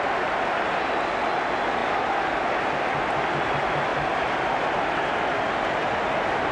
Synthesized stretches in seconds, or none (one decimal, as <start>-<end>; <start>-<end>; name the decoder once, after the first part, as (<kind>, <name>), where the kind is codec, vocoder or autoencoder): none